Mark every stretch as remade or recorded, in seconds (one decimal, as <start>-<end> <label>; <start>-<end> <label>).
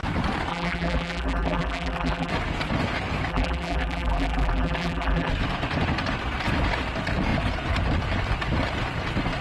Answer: 0.0-0.5 recorded; 0.5-2.3 remade; 2.3-3.3 recorded; 3.3-5.3 remade; 5.3-9.4 recorded